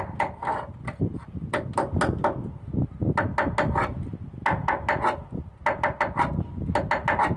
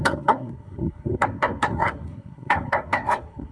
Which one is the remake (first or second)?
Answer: second